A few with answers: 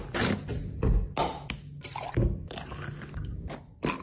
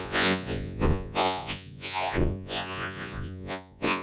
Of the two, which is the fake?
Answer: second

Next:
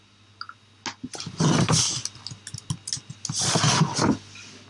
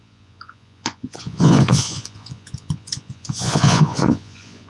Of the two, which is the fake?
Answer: second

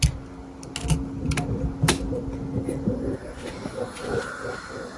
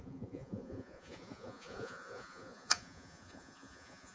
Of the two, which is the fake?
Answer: second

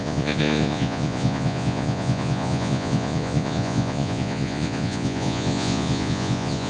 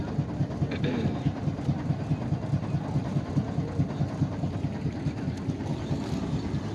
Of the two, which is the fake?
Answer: first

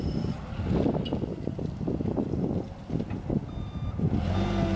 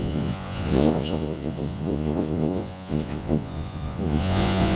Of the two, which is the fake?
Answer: second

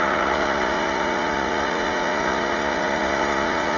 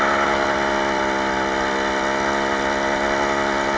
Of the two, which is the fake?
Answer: first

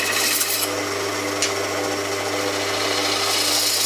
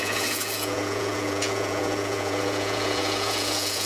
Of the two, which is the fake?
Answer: second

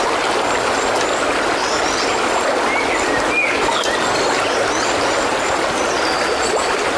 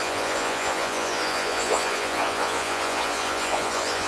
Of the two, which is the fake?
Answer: second